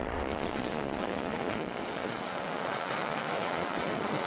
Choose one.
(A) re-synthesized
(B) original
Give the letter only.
A